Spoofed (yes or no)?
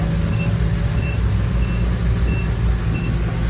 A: no